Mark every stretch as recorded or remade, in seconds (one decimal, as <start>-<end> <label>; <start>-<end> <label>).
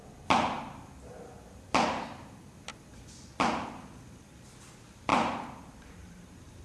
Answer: 0.0-5.1 recorded; 5.1-6.6 remade